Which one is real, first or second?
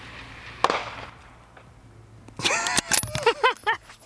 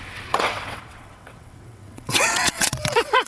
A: first